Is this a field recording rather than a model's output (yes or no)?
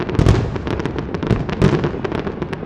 yes